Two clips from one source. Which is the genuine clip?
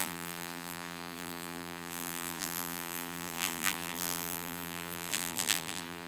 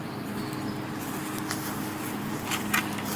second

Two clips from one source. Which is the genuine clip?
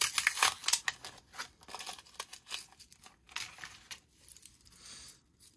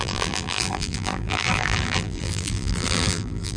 first